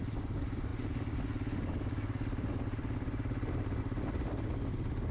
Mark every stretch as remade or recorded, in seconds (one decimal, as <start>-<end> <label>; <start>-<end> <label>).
0.0-5.1 recorded